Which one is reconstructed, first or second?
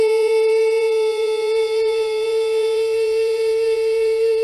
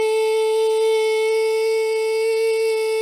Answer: first